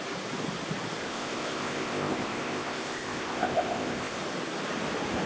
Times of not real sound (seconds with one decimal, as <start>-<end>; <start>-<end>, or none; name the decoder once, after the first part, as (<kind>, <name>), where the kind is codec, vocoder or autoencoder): 1.0-4.2 (codec, ZipCodec)